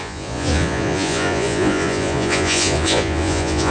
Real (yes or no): no